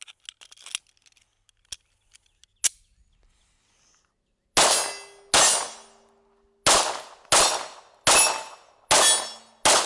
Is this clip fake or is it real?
real